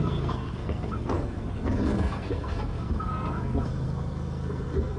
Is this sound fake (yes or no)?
yes